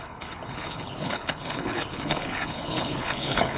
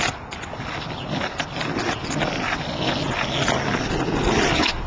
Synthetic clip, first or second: first